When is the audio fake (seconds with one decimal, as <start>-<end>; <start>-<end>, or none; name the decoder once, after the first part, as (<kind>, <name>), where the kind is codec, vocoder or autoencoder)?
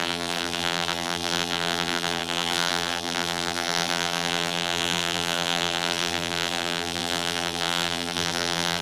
0.0-8.8 (vocoder, BigVGAN v2)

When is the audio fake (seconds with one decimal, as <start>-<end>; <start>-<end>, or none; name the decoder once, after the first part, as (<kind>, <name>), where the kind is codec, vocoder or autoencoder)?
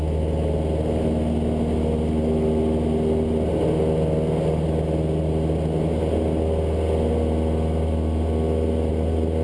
none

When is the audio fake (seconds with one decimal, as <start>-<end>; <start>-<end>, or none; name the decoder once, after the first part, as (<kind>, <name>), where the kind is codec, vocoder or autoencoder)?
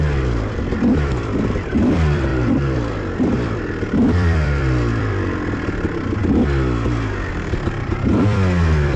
0.0-6.2 (vocoder, BigVGAN v2); 7.3-9.0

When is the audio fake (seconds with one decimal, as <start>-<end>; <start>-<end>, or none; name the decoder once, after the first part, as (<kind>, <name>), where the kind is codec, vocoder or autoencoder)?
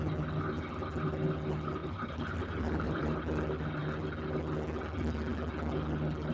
1.8-3.2 (vocoder, BigVGAN v2)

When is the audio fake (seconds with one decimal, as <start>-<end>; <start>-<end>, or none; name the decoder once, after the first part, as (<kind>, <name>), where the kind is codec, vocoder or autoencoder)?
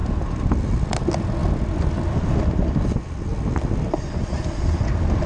none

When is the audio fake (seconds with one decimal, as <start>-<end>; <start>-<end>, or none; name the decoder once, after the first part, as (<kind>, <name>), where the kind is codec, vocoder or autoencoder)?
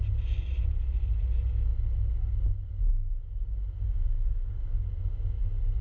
none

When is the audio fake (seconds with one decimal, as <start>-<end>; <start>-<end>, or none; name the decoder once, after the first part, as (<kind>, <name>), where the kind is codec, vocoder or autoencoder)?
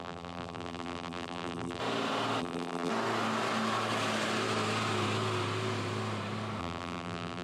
0.0-1.8 (vocoder, BigVGAN v2); 2.4-2.9; 6.6-7.4